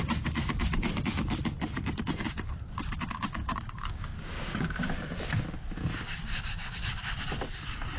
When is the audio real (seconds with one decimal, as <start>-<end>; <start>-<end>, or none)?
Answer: 0.0-3.4; 4.7-8.0